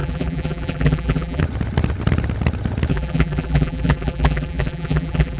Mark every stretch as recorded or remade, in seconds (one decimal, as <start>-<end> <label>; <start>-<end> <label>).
0.0-1.4 remade; 1.4-2.9 recorded; 2.9-5.4 remade